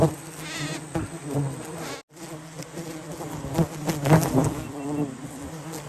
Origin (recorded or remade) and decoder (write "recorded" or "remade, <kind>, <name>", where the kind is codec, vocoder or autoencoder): recorded